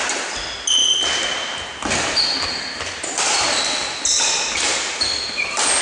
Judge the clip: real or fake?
real